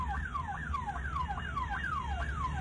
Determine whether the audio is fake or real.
real